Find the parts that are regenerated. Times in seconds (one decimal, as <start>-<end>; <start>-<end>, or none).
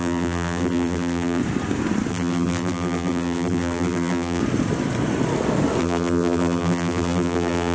0.0-1.4; 2.1-4.4; 5.8-7.7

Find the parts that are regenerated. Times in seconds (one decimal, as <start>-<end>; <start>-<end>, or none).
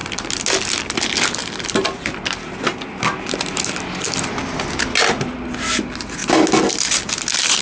none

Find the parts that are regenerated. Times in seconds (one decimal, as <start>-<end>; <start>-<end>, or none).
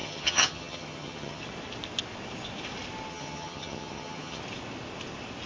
0.0-1.4; 3.1-4.4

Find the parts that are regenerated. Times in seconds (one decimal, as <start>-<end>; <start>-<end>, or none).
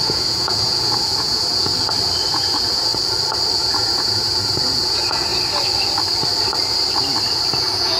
0.0-1.7; 2.3-2.9; 3.5-5.3; 7.6-8.0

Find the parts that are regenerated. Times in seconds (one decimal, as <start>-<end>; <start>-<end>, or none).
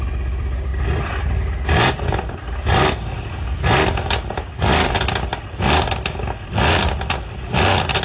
0.0-0.7; 4.5-5.3; 6.5-8.0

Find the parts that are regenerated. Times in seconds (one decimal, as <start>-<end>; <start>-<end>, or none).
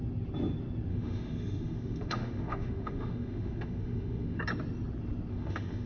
0.9-4.4; 5.3-5.9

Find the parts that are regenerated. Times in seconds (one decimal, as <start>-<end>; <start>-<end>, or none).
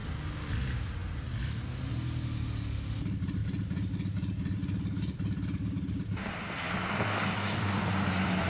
none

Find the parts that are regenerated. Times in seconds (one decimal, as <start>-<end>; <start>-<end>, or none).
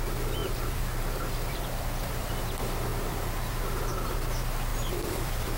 0.4-2.4; 2.9-3.6; 4.7-5.6